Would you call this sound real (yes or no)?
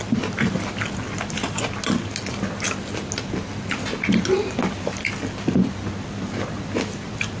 yes